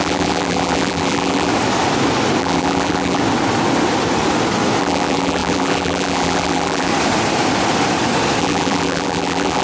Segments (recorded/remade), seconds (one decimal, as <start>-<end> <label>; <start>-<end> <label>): 0.0-1.5 remade; 1.5-2.4 recorded; 2.4-3.2 remade; 3.2-4.8 recorded; 4.8-6.9 remade; 6.9-8.4 recorded; 8.4-9.6 remade